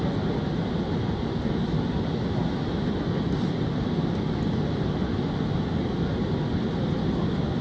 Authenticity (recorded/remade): recorded